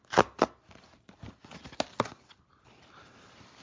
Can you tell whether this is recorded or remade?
recorded